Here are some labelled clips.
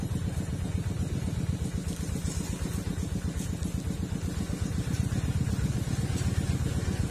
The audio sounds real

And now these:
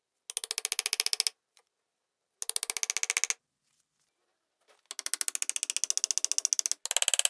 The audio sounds real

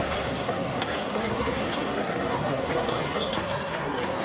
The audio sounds fake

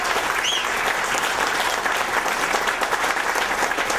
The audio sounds real